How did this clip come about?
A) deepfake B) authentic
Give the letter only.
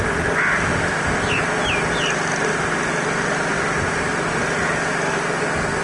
B